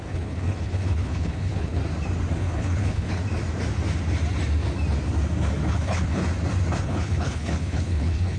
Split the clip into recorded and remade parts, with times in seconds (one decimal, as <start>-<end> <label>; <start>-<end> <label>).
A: 0.0-1.8 remade; 1.8-2.4 recorded; 2.4-3.2 remade; 3.2-5.7 recorded; 5.7-6.2 remade; 6.2-6.8 recorded; 6.8-8.4 remade